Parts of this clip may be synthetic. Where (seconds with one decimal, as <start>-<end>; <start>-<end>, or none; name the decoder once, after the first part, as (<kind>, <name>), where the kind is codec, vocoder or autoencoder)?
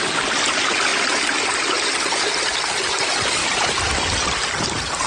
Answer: none